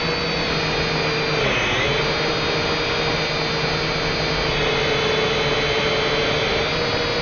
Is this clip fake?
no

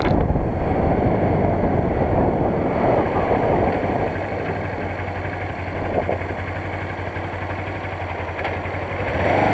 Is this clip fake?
no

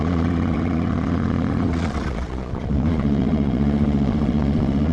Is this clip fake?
yes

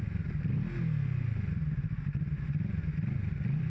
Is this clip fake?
no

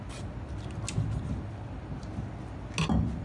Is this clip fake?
no